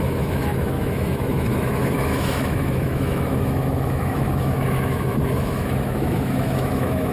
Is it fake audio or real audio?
fake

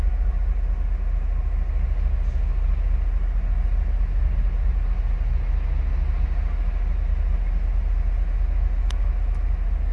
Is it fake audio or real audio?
real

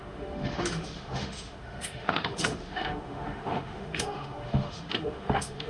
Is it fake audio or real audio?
fake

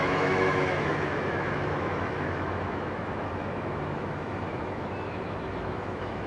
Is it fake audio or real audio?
fake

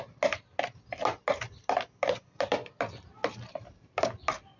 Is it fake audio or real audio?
real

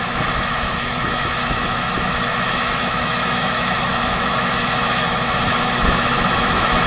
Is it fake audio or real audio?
fake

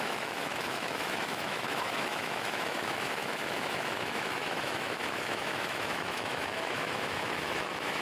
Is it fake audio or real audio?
fake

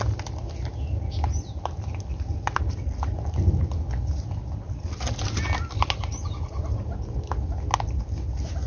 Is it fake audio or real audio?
real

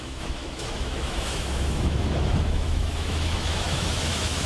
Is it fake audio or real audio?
fake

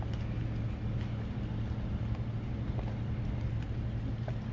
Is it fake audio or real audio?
real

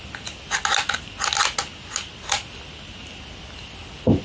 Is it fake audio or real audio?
real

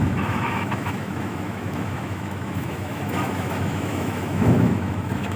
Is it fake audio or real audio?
fake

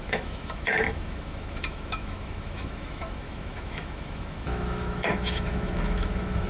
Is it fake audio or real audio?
fake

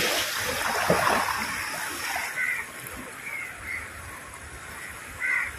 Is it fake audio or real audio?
real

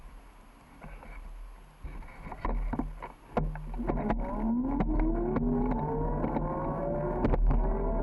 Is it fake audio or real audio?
real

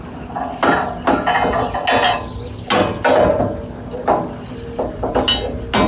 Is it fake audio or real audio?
real